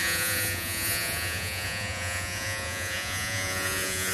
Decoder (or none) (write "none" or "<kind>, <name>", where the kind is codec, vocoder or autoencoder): vocoder, Vocos